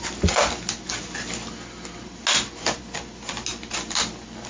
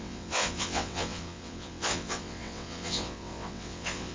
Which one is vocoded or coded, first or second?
second